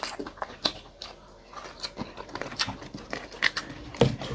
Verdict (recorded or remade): recorded